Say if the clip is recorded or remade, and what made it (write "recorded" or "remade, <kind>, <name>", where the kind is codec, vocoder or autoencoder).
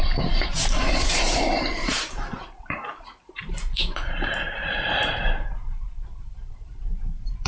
remade, vocoder, BigVGAN v2